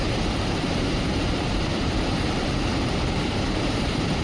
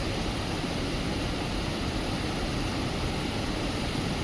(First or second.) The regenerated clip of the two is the first